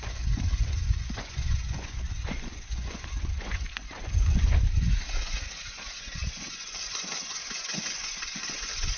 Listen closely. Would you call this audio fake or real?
fake